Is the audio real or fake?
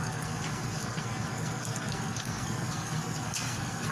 fake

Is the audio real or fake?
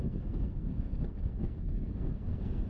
fake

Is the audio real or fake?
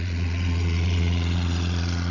fake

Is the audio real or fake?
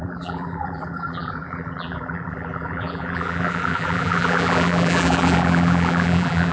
fake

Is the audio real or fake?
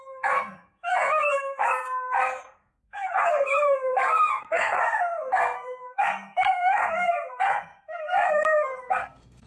fake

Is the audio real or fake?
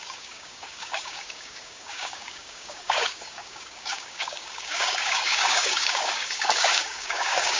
fake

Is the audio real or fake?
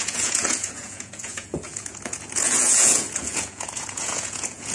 fake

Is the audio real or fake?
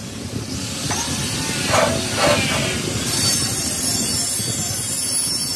real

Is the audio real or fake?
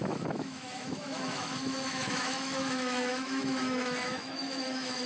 fake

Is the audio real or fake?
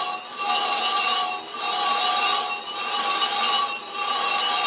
real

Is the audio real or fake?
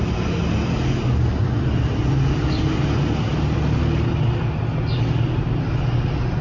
real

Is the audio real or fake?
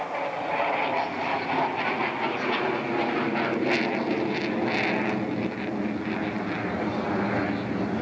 real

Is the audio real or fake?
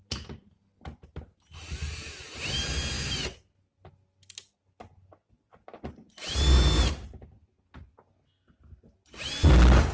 real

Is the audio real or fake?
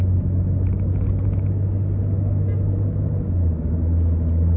real